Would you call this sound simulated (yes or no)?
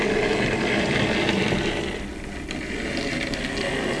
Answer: no